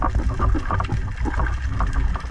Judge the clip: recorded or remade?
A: recorded